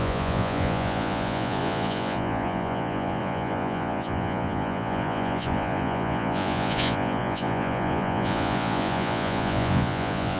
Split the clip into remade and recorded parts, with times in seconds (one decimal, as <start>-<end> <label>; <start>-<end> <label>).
0.0-10.4 remade